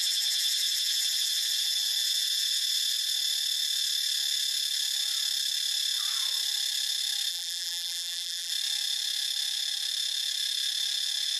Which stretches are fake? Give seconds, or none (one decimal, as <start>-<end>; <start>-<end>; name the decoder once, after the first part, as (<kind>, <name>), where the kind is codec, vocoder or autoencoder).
7.3-8.5 (vocoder, BigVGAN v2)